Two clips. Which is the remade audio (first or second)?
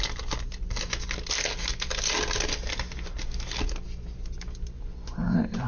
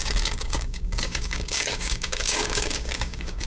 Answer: second